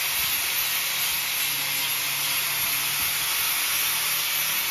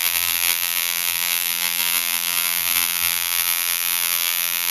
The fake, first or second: second